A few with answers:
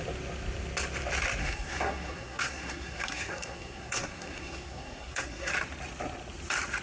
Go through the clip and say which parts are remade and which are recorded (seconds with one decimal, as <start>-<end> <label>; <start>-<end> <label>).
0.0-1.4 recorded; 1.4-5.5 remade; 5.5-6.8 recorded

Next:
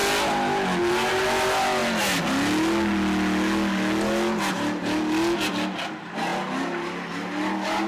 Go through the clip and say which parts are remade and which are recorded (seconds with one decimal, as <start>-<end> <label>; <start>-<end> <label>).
0.0-7.9 recorded

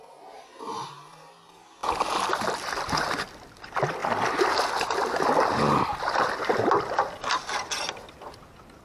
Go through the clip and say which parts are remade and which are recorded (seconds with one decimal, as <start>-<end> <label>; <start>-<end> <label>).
0.0-8.8 recorded